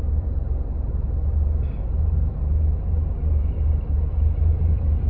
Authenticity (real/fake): fake